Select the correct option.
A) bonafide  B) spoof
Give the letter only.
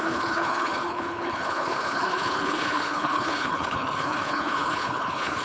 B